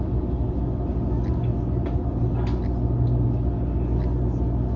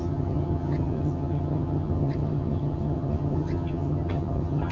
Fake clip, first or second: second